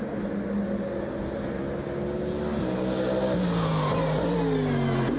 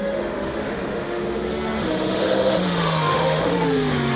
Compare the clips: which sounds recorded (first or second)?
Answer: first